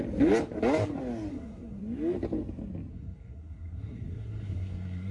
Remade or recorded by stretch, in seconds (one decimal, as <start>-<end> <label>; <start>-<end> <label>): 0.0-1.3 recorded; 1.3-1.8 remade; 1.8-2.9 recorded; 2.9-5.1 remade